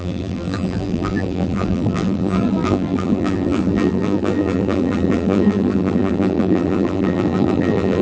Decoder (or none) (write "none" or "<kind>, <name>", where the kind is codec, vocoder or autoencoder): vocoder, BigVGAN v2